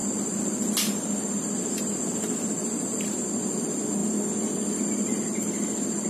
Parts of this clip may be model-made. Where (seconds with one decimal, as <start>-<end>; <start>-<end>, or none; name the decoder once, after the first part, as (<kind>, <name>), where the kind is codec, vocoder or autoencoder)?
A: 4.0-4.8 (vocoder, BigVGAN v2)